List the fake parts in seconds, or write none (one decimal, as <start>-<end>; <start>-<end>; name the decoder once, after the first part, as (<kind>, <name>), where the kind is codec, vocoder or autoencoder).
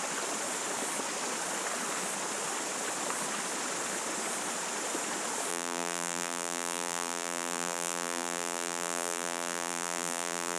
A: 5.5-10.6 (vocoder, BigVGAN v2)